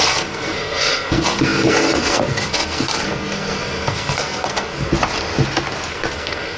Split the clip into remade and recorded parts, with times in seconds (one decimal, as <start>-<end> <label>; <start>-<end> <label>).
0.0-4.9 remade; 4.9-5.9 recorded; 5.9-6.6 remade